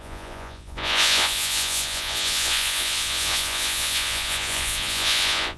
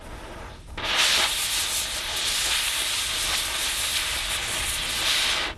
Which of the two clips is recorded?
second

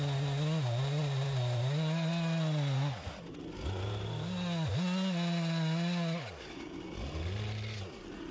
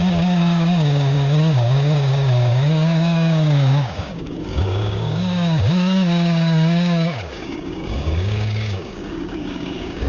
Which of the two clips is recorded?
first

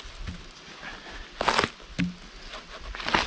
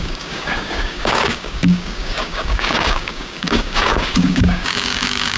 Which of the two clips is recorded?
first